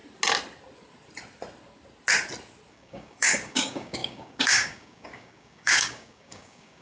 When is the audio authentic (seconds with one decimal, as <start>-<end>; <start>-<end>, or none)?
0.0-2.7